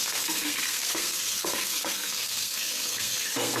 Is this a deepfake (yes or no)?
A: yes